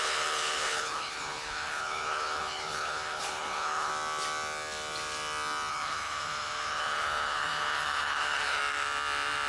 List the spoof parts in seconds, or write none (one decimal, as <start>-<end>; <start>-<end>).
0.0-3.9; 5.7-8.6

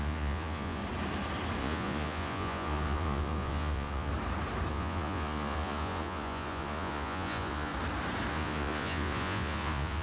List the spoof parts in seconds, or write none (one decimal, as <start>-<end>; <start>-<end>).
0.0-0.8; 1.6-4.1; 4.7-7.7; 8.3-10.0

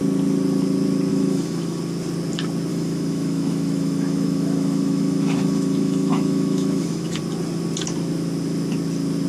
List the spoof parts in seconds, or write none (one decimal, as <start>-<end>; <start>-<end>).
1.1-1.8; 2.7-7.2

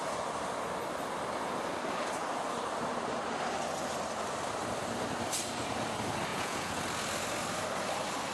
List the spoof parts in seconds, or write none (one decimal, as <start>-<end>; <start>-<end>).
6.3-6.8